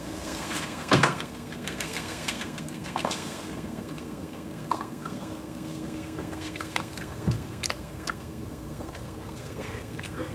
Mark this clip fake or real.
fake